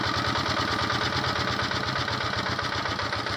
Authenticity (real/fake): real